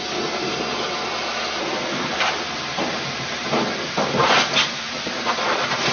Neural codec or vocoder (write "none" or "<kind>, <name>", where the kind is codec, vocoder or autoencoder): none